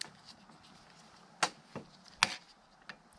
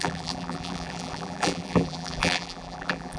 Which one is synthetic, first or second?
second